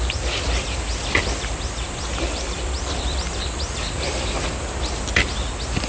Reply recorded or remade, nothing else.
recorded